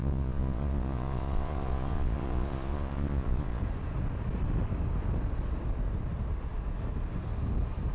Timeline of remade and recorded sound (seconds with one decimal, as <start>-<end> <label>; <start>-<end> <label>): 0.0-3.6 remade; 3.6-7.9 recorded